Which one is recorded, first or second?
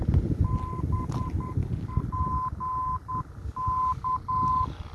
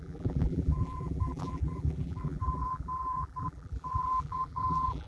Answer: first